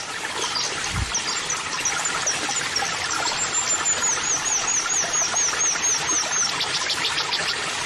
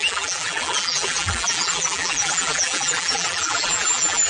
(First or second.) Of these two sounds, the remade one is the second